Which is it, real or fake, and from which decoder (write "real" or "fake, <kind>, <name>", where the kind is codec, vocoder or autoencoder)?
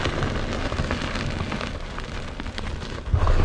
real